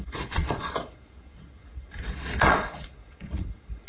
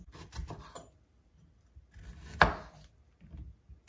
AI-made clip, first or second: first